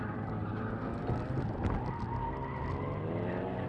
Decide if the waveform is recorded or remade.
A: recorded